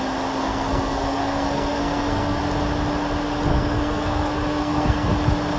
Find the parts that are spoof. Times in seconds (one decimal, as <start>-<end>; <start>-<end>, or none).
0.4-2.4; 3.5-5.1

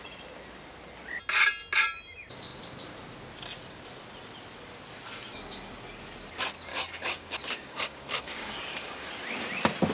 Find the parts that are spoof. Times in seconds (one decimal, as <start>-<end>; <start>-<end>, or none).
6.7-9.1

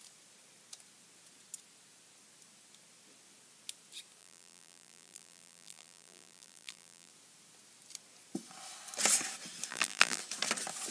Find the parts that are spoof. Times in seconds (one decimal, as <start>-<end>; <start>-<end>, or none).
4.2-7.1; 9.7-10.2

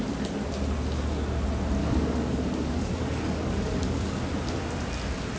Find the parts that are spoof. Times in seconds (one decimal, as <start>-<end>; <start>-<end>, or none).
1.8-4.2

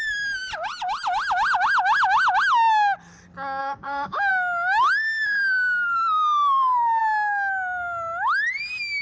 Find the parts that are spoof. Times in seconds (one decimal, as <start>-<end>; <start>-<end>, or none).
3.6-4.3

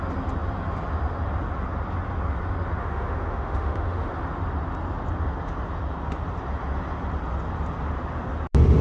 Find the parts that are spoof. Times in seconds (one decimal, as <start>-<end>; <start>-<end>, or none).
2.8-4.1

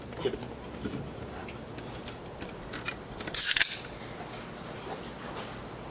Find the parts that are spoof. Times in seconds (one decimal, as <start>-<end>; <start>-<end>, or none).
none

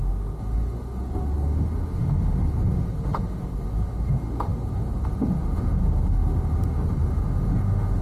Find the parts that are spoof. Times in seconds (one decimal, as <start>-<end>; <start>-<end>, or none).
0.0-8.0